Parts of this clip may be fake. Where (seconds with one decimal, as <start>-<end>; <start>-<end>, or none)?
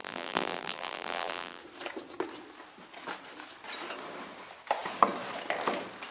0.0-1.6